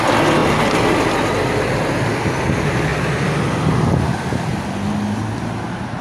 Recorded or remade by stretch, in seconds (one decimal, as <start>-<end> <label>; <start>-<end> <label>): 0.0-6.0 recorded